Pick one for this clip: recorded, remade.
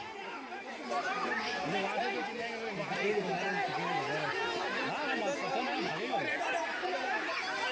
recorded